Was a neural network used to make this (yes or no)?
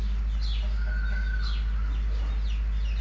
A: no